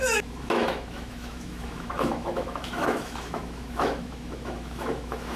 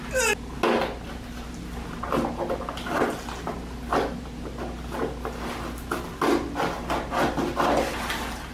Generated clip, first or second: first